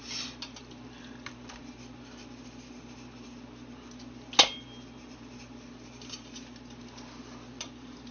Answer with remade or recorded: recorded